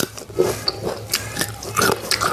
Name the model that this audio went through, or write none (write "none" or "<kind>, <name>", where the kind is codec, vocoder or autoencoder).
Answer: none